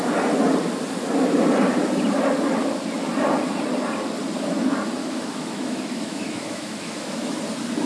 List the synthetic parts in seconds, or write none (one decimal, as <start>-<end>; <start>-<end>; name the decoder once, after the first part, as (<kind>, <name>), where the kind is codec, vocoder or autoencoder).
5.0-7.4 (autoencoder, DAC-VAE)